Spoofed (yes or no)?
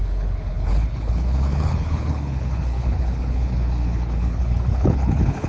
yes